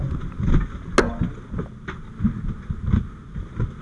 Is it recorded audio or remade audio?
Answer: recorded